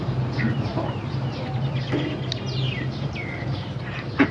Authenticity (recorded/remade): remade